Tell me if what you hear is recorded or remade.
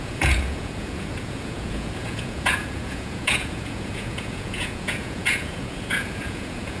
remade